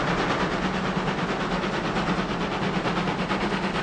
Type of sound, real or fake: real